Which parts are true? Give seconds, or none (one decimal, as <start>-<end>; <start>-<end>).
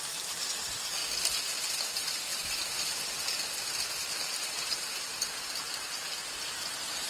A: 0.0-7.1